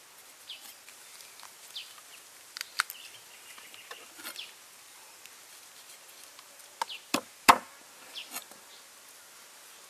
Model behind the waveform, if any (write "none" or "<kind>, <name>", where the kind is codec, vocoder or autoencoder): none